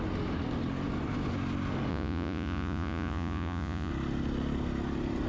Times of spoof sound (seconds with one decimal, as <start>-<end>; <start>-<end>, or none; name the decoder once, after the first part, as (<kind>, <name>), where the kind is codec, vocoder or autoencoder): 1.9-3.9 (vocoder, Vocos)